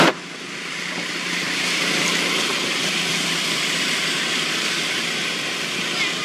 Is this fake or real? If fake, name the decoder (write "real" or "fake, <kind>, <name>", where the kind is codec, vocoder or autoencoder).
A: real